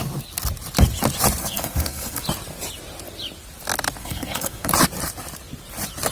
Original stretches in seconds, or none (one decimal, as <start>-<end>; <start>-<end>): 0.0-1.4; 2.2-4.0; 4.7-6.1